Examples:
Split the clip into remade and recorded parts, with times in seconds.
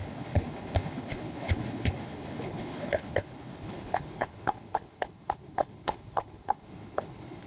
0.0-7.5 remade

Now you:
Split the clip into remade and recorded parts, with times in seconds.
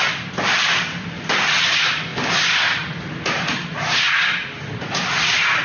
0.0-5.6 recorded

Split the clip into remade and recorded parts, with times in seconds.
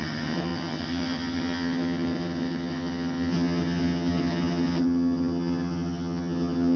0.0-6.8 remade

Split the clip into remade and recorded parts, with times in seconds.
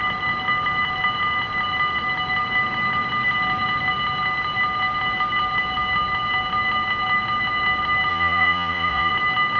0.0-8.1 recorded; 8.1-9.1 remade; 9.1-9.6 recorded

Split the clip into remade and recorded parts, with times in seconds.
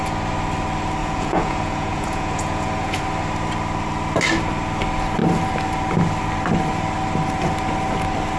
0.0-1.0 recorded; 1.0-3.0 remade; 3.0-8.4 recorded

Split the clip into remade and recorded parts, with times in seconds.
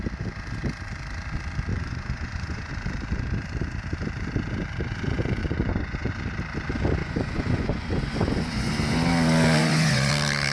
0.0-1.7 recorded; 1.7-2.7 remade; 2.7-5.4 recorded; 5.4-6.1 remade; 6.1-7.0 recorded; 7.0-8.7 remade; 8.7-9.6 recorded; 9.6-10.1 remade; 10.1-10.5 recorded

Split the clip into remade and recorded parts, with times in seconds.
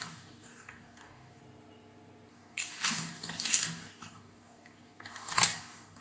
0.0-1.4 remade; 1.4-2.3 recorded; 2.3-6.0 remade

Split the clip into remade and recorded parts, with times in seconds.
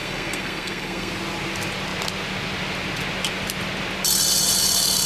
0.0-1.1 remade; 1.1-5.1 recorded